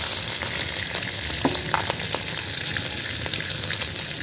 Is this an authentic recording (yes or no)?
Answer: yes